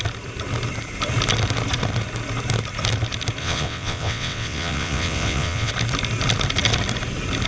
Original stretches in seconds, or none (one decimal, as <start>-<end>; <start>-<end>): 0.0-3.4; 5.7-7.5